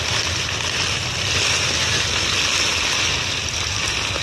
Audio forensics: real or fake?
real